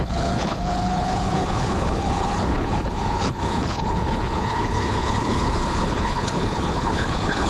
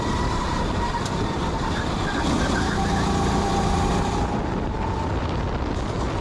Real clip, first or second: second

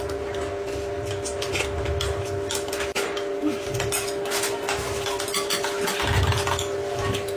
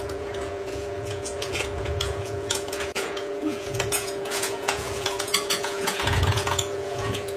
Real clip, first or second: first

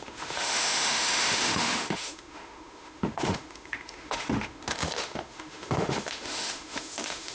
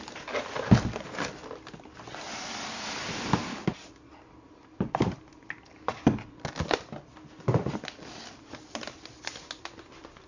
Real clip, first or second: second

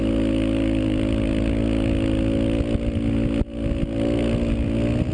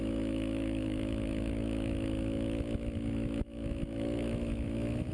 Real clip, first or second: first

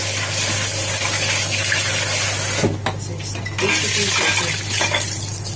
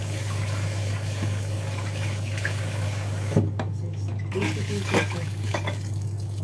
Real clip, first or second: first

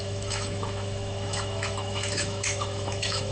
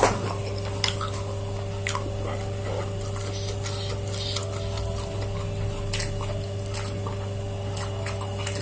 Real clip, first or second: second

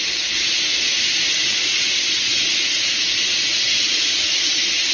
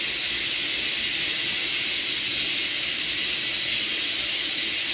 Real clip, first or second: second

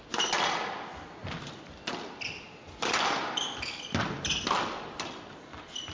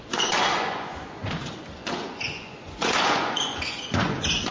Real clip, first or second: first